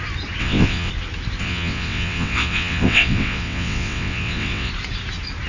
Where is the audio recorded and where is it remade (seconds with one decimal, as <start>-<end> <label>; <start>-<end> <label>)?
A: 0.0-0.4 recorded; 0.4-0.9 remade; 0.9-1.4 recorded; 1.4-4.7 remade; 4.7-5.5 recorded